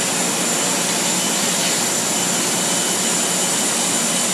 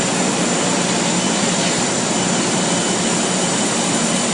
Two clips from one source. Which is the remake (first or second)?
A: second